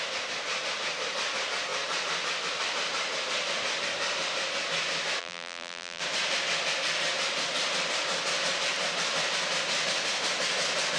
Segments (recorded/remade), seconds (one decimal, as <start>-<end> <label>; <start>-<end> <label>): 0.0-5.2 recorded; 5.2-6.0 remade; 6.0-11.0 recorded